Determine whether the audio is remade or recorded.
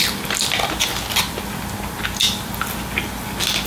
recorded